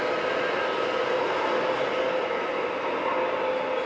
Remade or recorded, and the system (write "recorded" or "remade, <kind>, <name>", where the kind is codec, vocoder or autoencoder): recorded